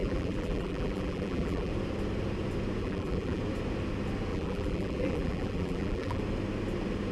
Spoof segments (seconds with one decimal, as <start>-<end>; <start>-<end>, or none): 0.0-1.7; 2.8-3.4; 4.3-6.2